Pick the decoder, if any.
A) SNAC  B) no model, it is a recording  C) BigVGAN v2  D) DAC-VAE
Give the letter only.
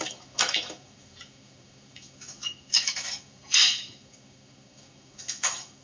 D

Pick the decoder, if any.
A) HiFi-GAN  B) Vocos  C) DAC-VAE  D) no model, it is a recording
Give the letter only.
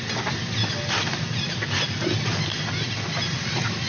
D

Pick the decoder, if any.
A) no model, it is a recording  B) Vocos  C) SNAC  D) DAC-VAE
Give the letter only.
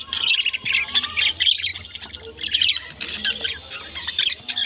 A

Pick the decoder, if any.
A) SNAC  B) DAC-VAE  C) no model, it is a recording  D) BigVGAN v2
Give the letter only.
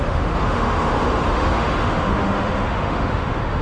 B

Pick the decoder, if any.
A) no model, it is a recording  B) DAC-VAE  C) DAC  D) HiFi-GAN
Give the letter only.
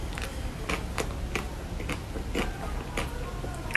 A